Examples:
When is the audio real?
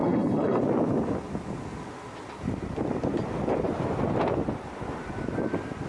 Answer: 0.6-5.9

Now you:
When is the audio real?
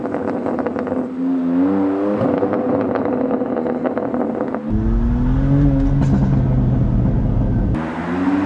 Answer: 0.0-8.5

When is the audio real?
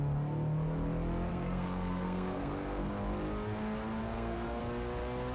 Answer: 0.0-1.3; 2.9-4.0; 4.6-5.3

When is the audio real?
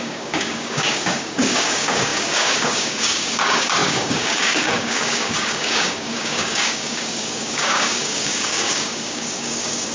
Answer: none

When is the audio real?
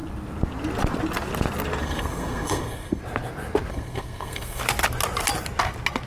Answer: 0.0-1.8; 3.0-3.7; 4.6-6.1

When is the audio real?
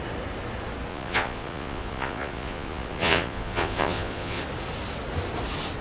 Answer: 0.0-0.9; 4.4-5.8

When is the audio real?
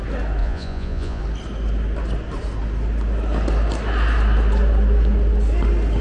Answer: 0.0-0.4; 1.2-6.0